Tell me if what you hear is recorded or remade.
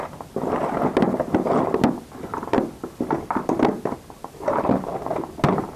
recorded